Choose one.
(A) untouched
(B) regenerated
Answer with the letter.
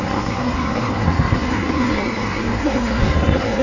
B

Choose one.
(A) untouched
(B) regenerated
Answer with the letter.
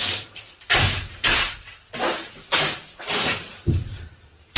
B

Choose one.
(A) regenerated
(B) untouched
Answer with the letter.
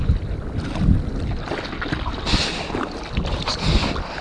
B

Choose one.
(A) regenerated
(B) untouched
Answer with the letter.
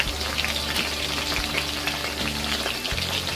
B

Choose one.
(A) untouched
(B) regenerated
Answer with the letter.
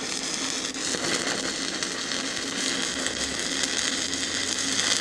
A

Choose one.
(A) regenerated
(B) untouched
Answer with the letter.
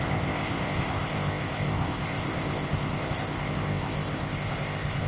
A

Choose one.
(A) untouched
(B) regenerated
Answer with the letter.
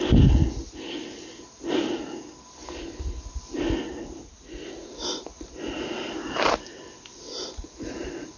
A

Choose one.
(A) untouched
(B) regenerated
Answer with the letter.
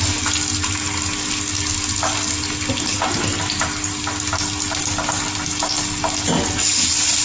A